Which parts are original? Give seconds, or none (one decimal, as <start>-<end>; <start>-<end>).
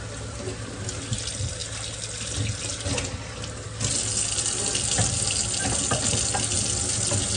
0.0-7.4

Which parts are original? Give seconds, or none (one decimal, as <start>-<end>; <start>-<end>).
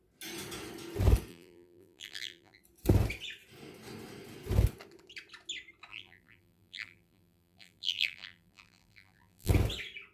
0.0-1.3; 2.6-5.9; 9.5-10.1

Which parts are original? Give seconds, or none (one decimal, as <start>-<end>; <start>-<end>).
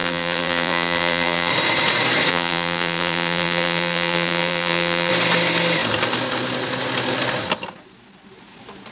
1.5-2.3; 5.1-8.9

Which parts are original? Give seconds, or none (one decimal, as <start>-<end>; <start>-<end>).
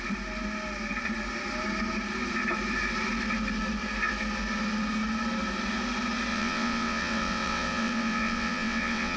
0.0-6.3